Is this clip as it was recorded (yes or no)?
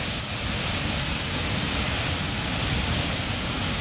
yes